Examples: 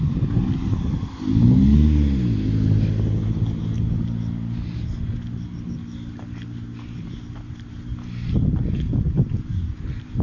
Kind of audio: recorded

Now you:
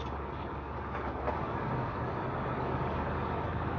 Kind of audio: remade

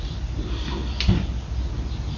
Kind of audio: recorded